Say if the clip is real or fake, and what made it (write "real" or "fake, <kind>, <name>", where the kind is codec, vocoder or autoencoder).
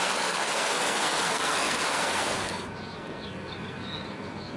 fake, codec, SNAC